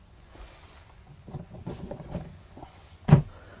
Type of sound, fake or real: fake